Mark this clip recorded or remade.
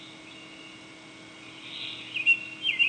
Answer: recorded